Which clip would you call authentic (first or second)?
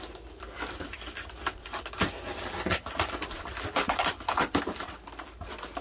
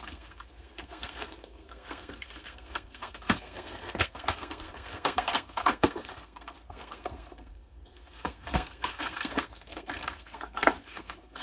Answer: first